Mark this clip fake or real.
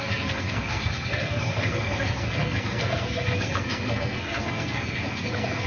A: fake